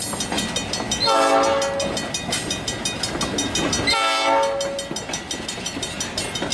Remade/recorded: recorded